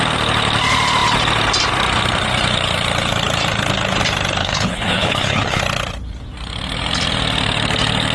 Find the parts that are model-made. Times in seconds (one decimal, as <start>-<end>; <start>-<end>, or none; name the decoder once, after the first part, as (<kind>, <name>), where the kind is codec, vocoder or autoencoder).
4.4-5.6 (codec, HILCodec)